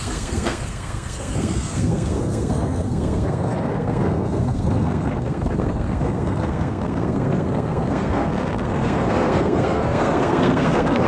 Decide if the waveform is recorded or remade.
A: remade